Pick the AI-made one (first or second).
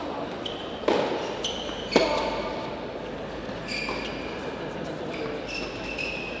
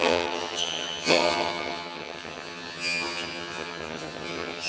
second